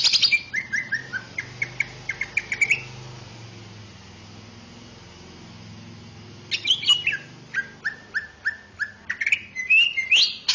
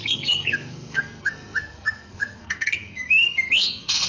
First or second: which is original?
first